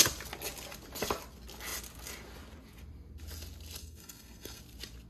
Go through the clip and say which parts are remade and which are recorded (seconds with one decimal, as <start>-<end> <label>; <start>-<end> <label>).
0.0-3.8 recorded; 3.8-4.6 remade; 4.6-5.1 recorded